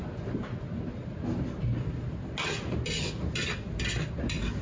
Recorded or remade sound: recorded